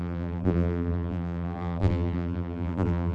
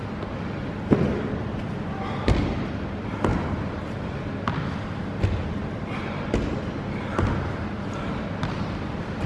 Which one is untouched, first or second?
second